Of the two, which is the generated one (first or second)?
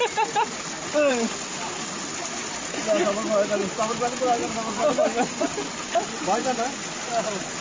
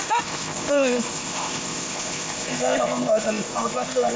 second